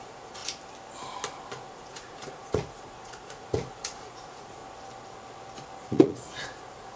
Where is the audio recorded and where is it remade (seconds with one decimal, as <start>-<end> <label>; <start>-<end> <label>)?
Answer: 0.0-0.4 remade; 0.4-1.5 recorded; 1.5-4.6 remade; 4.6-5.8 recorded; 5.8-7.0 remade